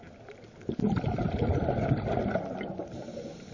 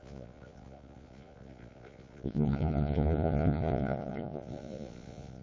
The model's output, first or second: second